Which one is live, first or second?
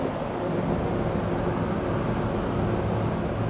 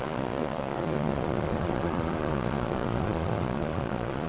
first